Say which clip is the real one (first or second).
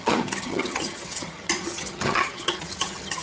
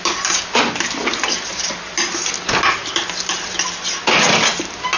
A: second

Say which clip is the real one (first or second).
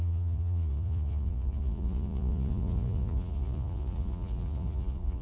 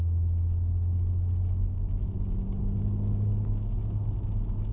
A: second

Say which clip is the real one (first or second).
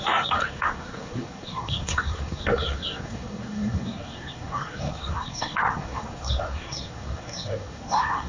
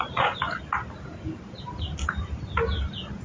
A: second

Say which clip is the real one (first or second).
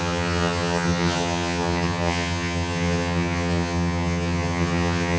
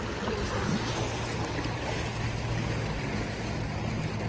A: second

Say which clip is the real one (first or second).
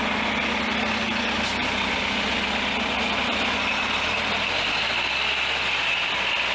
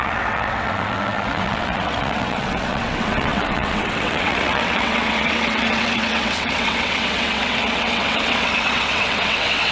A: first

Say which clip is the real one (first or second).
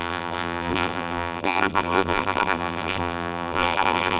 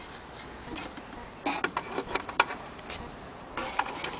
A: second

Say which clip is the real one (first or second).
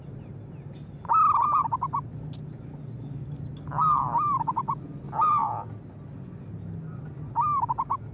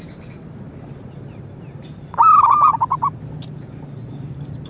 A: first